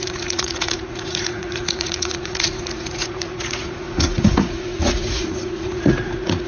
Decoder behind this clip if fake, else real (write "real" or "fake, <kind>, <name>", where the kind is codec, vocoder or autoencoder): fake, vocoder, Vocos